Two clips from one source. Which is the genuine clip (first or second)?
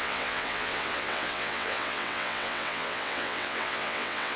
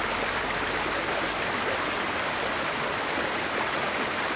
second